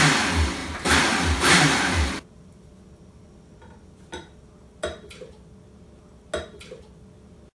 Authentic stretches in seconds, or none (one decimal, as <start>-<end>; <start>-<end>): 0.0-0.6; 2.3-7.6